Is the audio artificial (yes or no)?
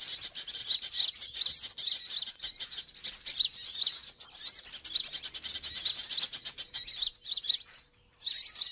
no